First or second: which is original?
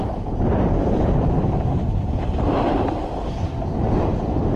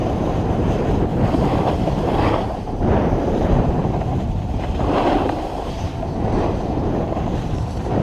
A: first